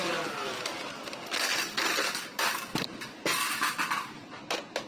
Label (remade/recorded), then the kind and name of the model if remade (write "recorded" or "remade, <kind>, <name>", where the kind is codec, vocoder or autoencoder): recorded